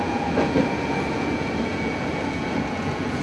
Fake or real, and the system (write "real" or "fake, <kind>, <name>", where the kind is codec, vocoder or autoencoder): fake, vocoder, Vocos